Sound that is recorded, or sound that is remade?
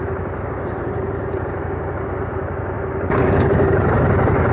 recorded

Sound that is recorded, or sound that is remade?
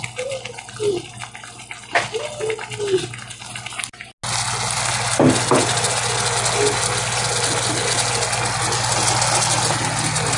recorded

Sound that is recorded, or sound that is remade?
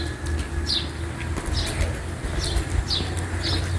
recorded